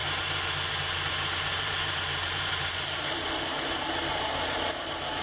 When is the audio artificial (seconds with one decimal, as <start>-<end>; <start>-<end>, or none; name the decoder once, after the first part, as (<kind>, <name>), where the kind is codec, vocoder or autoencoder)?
1.5-4.3 (vocoder, BigVGAN v2)